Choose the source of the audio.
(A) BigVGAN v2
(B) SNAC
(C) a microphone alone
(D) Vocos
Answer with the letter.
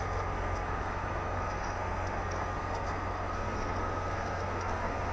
B